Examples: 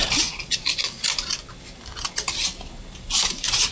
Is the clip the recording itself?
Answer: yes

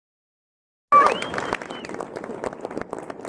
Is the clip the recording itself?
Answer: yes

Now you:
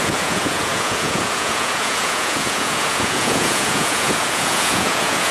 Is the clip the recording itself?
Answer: no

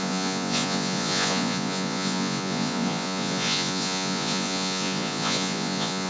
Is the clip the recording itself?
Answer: no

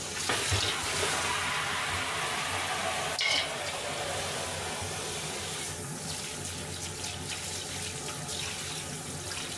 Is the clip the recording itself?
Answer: yes